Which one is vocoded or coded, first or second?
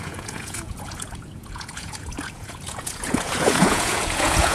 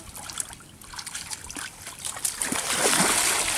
first